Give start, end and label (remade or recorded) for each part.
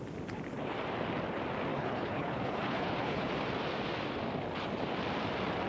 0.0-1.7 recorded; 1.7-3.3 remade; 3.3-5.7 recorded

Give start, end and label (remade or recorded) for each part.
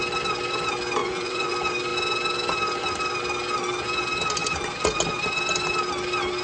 0.0-1.0 recorded; 1.0-1.5 remade; 1.5-6.4 recorded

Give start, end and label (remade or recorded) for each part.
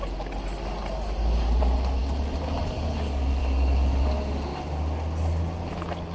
0.0-0.8 recorded; 0.8-1.6 remade; 1.6-6.1 recorded